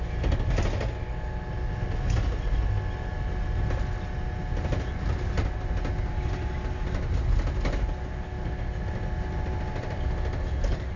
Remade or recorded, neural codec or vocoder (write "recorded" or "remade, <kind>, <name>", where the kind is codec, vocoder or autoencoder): recorded